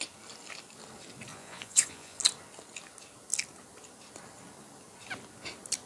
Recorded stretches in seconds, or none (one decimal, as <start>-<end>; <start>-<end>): 0.0-1.3; 2.2-5.9

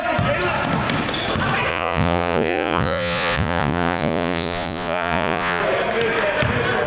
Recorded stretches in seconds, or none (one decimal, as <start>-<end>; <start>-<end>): 0.0-1.7; 5.6-6.9

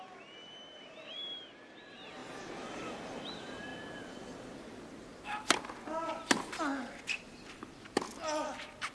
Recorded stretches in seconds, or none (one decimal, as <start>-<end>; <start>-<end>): 0.0-8.9

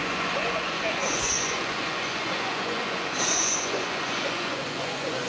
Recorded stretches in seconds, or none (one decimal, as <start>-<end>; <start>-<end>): none

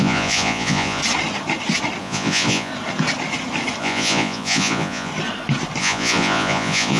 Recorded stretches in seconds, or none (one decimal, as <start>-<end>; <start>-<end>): 1.0-2.0; 2.7-3.8; 5.1-5.8

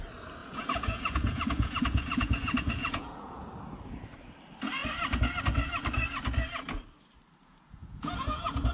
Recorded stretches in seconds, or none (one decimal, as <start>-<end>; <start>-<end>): 0.0-0.4; 3.5-7.4

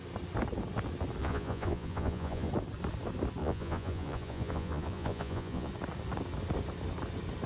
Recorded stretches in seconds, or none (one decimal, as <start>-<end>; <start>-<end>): 0.0-1.2; 2.5-3.4; 5.7-7.5

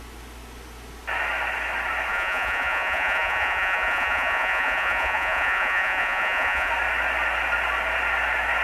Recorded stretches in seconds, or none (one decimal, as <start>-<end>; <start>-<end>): 0.0-2.1; 6.7-8.6